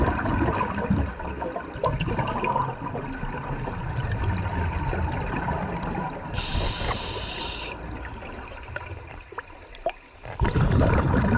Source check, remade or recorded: recorded